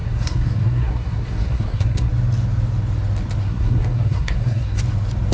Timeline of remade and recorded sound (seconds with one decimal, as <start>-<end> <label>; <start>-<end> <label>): 0.0-2.1 remade; 2.1-3.4 recorded; 3.4-4.8 remade; 4.8-5.3 recorded